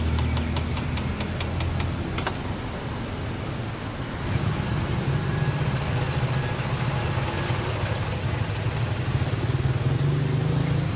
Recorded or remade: recorded